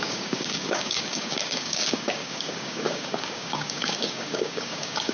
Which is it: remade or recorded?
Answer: remade